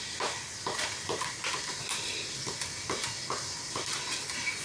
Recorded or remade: recorded